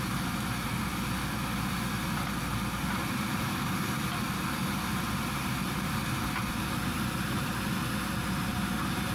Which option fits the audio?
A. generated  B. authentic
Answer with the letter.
B